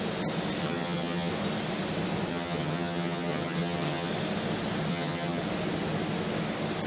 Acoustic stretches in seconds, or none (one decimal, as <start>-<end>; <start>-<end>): 0.0-0.6; 1.3-2.3; 4.1-4.9; 5.4-6.9